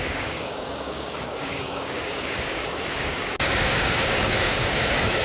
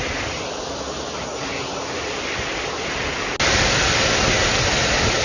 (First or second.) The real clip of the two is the second